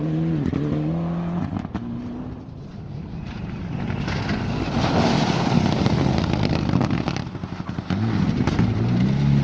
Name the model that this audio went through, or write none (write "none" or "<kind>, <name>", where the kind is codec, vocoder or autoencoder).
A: none